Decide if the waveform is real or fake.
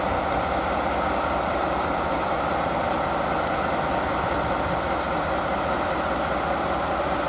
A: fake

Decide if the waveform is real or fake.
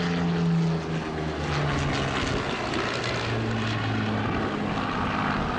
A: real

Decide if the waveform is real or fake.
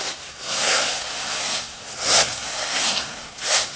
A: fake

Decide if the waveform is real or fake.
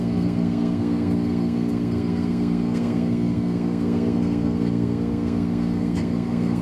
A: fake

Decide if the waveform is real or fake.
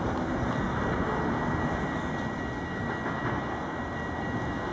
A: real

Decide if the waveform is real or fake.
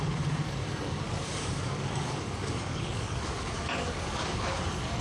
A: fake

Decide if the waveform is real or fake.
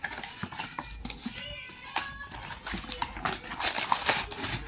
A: real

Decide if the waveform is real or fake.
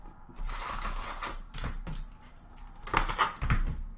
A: real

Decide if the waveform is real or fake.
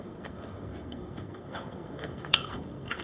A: fake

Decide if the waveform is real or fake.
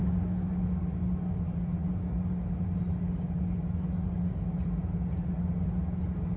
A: real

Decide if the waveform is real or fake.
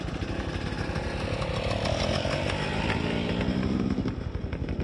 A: real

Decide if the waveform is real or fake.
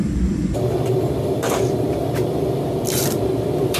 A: fake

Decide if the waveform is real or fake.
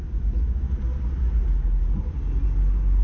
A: real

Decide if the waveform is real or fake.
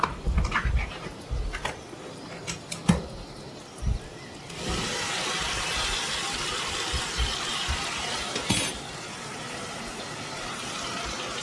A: real